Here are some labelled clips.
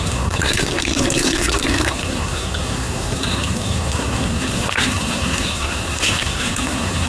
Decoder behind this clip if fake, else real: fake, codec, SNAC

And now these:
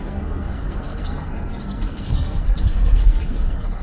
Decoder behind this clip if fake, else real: fake, codec, SNAC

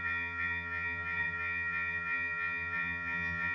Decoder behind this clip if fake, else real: fake, vocoder, HiFi-GAN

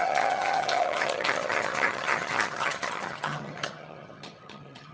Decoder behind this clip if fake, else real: fake, vocoder, HiFi-GAN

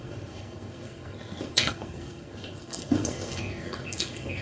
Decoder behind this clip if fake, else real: fake, codec, SNAC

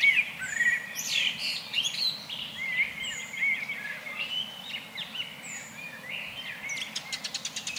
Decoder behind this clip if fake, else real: real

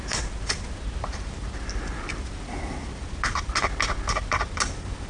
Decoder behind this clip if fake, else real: real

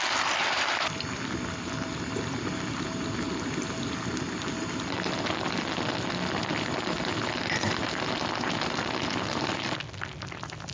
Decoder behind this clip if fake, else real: real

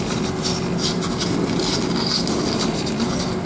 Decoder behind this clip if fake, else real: real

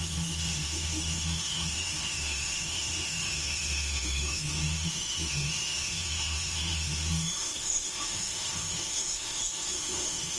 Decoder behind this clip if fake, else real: fake, autoencoder, DAC-VAE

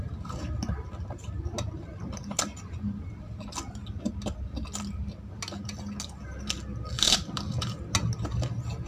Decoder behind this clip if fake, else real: real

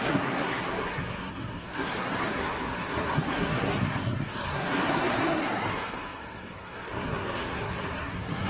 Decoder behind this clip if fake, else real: fake, codec, SNAC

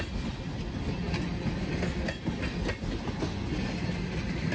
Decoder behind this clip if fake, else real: real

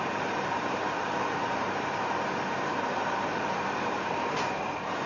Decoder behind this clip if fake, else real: fake, vocoder, BigVGAN v2